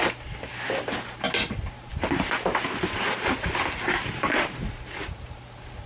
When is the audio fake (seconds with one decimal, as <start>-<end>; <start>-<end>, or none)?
none